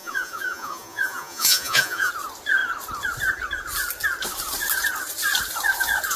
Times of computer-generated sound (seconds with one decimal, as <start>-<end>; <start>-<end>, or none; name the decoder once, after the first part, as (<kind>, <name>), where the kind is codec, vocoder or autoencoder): 0.0-2.1 (vocoder, Vocos)